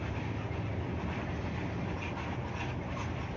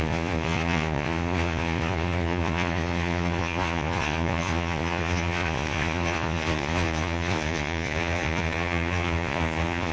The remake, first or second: second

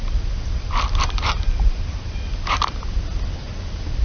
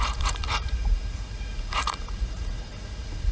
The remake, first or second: second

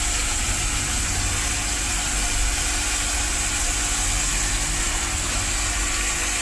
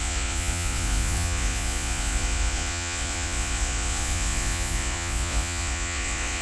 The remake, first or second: second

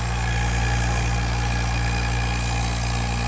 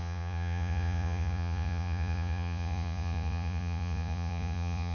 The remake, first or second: second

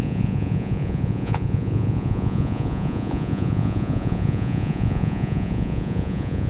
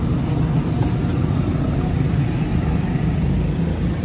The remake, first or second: first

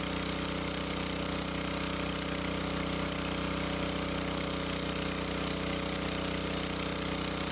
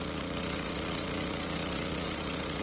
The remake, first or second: second